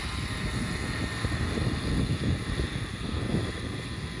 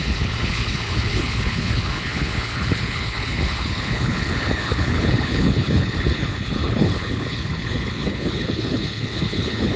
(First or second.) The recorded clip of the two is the first